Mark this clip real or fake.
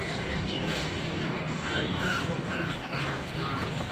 fake